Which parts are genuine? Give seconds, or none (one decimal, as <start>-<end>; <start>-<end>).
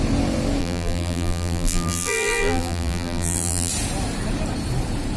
0.0-0.6; 3.7-5.2